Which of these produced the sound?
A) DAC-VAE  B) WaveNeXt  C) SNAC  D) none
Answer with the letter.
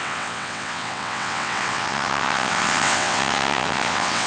B